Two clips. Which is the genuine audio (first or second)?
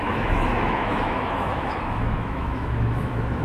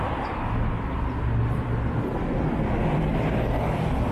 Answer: second